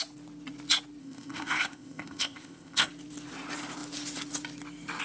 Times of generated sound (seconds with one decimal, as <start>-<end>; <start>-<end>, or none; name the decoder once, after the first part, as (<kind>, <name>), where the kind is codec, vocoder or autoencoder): 1.0-2.9 (codec, ZipCodec)